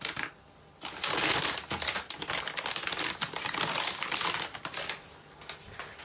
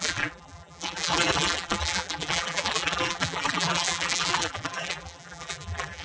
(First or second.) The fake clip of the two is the second